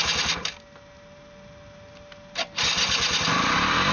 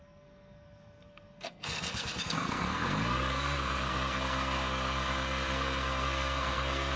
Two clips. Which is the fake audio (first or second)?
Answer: second